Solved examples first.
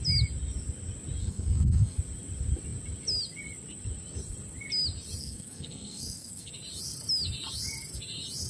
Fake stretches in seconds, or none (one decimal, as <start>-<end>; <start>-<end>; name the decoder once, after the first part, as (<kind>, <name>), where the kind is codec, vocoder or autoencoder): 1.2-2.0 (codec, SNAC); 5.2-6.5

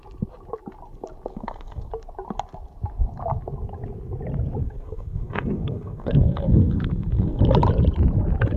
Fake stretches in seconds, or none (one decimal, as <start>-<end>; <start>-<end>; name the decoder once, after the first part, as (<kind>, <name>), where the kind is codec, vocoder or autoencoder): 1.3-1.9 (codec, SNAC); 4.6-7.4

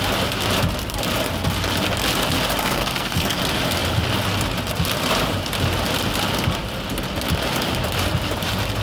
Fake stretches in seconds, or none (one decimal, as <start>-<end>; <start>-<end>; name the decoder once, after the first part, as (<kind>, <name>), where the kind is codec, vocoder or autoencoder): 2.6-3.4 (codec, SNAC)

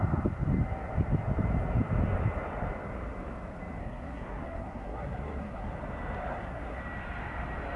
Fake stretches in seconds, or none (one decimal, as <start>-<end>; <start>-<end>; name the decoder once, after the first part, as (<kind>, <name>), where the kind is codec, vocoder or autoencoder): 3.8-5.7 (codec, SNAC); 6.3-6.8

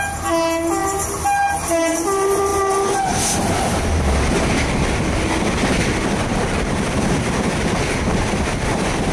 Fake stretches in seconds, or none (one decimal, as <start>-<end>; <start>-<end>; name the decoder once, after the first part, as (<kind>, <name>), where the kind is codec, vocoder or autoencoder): none